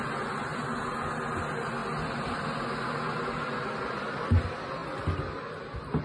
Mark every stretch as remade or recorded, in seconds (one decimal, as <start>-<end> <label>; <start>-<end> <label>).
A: 0.0-6.0 recorded